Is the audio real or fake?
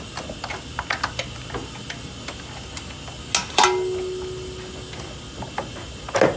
real